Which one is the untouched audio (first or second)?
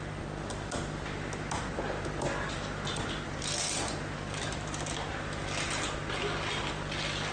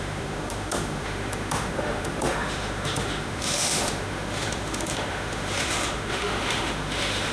first